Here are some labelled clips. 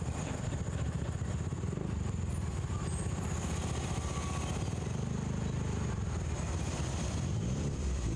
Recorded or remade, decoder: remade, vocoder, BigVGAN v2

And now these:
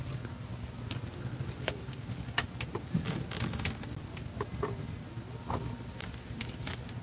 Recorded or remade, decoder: recorded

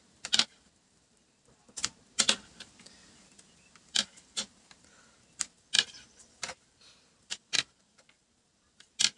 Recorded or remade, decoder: remade, vocoder, BigVGAN v2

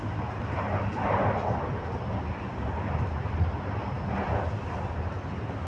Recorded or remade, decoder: recorded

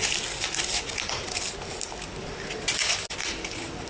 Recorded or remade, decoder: recorded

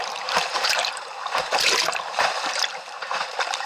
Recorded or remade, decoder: remade, vocoder, BigVGAN v2